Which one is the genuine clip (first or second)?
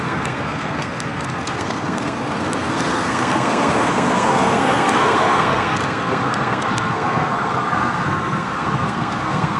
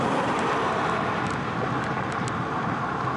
second